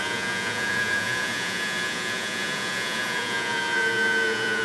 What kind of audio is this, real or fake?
fake